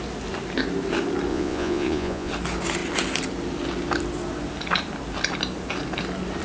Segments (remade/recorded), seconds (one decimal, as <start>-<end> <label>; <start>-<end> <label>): 0.0-1.3 recorded; 1.3-2.3 remade; 2.3-6.4 recorded